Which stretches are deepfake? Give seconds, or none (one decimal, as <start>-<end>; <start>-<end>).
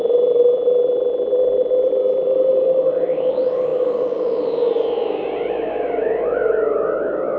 none